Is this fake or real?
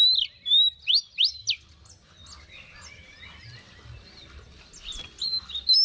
real